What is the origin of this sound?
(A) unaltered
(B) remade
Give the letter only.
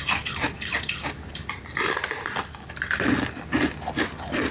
A